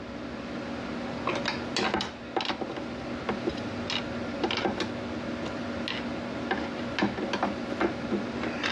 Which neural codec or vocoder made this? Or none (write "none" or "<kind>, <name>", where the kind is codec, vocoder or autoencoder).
none